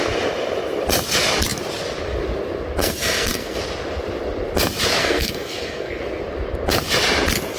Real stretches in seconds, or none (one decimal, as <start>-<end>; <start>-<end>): 0.0-2.8; 3.6-5.0; 6.0-7.6